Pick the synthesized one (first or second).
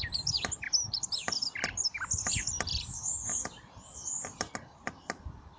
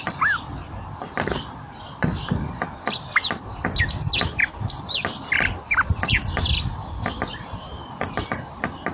first